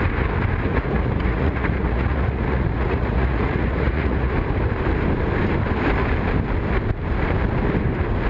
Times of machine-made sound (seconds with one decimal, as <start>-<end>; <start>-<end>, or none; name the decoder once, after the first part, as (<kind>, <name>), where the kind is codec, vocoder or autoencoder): 0.7-4.3 (vocoder, Vocos)